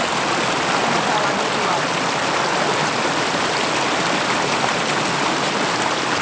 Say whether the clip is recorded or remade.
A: recorded